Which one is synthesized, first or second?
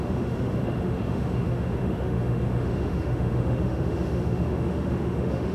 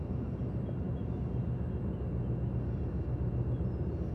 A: first